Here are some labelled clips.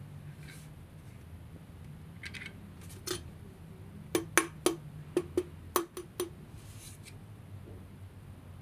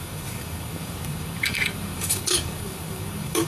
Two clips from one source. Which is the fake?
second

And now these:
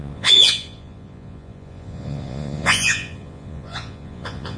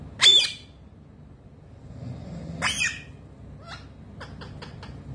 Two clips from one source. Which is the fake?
first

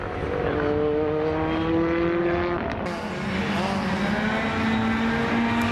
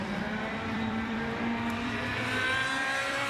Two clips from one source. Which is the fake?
second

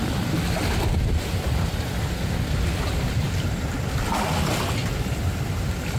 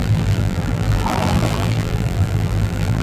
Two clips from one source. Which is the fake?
second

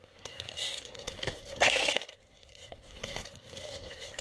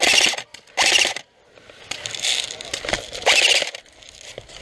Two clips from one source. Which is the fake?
first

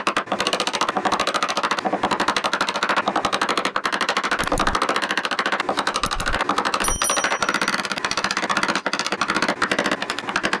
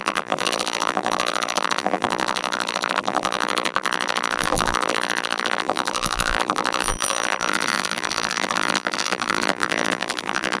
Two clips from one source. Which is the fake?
second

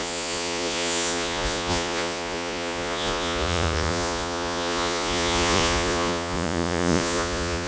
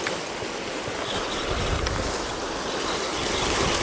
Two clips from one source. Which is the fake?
first